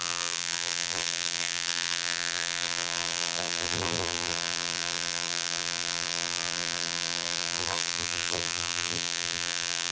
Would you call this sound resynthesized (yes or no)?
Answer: yes